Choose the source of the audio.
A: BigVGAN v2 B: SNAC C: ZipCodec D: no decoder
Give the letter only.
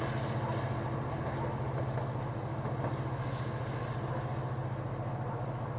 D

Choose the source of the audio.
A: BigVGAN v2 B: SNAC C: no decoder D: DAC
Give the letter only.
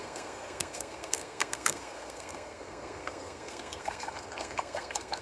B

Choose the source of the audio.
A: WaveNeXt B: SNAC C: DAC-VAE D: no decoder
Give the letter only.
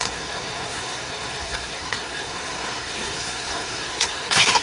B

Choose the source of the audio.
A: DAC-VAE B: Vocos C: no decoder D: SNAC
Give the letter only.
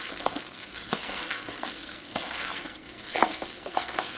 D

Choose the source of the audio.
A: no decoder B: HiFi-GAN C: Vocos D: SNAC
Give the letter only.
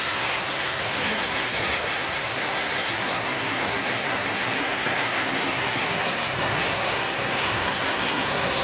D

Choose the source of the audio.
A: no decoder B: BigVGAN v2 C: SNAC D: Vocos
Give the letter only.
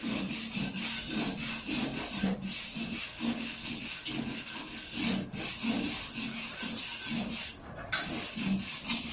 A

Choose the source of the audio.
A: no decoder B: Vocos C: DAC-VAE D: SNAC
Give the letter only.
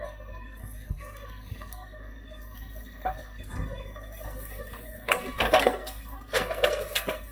D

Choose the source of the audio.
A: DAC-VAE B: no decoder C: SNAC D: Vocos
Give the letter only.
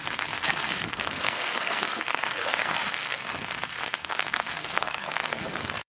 C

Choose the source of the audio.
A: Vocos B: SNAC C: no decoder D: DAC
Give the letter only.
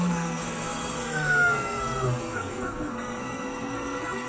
B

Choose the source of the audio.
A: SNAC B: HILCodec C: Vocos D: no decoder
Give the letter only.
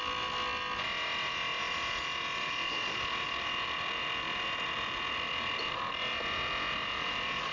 D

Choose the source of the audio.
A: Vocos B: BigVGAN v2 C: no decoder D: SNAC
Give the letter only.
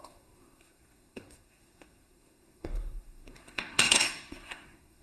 D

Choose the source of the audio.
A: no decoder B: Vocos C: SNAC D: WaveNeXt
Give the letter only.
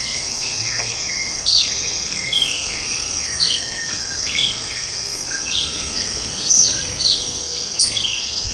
C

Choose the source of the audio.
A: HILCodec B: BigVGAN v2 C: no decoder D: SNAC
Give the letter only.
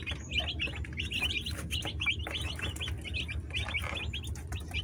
C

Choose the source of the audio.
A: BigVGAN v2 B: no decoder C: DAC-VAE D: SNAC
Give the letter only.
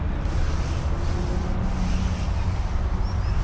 B